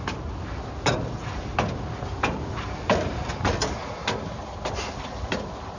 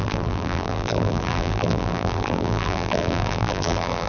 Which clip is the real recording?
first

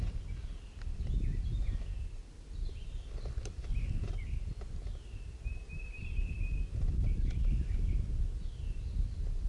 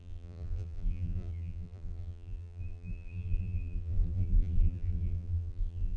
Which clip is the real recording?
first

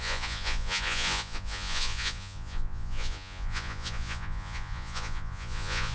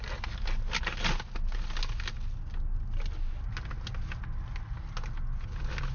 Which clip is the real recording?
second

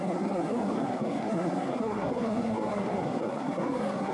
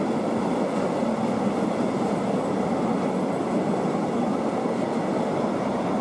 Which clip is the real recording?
second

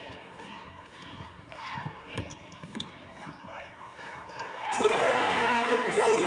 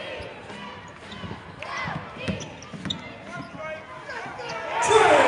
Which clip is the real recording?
second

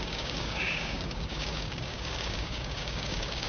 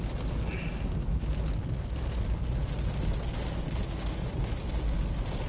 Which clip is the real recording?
second